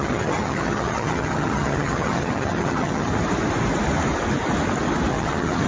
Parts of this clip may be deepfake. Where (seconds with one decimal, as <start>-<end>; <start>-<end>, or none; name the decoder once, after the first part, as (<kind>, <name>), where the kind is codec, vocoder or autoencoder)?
0.0-3.1 (vocoder, HiFi-GAN); 5.1-5.7